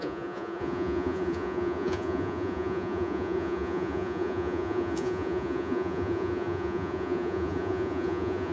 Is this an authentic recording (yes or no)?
no